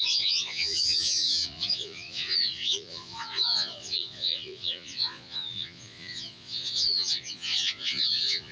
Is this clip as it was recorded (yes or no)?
no